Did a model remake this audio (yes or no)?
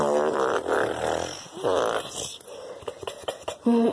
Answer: no